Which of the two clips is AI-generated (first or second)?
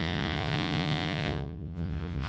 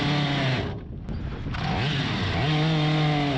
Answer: first